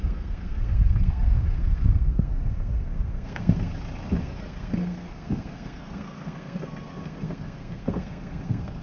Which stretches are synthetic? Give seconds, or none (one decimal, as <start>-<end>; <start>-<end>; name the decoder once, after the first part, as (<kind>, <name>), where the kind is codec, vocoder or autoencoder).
0.0-3.7 (codec, SNAC); 4.2-8.8